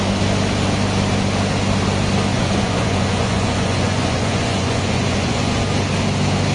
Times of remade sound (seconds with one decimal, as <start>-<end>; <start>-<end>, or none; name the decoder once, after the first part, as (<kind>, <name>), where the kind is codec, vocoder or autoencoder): 2.3-5.6 (vocoder, Vocos)